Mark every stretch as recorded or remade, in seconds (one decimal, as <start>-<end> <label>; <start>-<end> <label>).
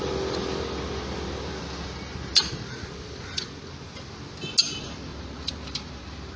0.0-2.3 recorded; 2.3-3.6 remade; 3.6-5.1 recorded; 5.1-6.4 remade